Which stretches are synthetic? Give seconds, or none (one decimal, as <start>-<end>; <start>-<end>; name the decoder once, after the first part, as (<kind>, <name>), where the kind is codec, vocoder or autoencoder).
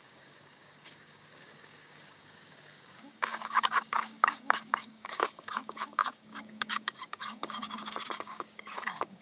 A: 0.0-9.2 (codec, DAC)